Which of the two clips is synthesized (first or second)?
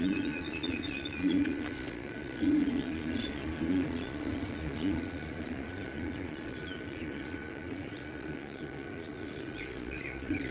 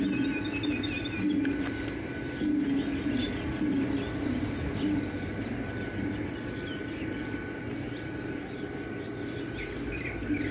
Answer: first